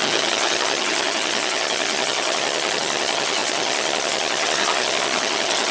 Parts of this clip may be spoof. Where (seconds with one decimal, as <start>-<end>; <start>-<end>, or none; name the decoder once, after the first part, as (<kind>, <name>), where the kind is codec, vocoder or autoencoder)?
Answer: 0.0-5.7 (vocoder, HiFi-GAN)